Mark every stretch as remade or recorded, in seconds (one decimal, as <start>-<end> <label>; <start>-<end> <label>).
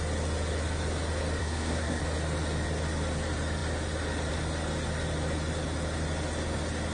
0.0-1.4 recorded; 1.4-2.0 remade; 2.0-6.9 recorded